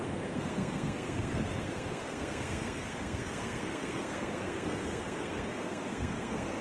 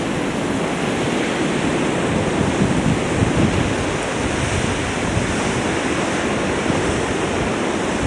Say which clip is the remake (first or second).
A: first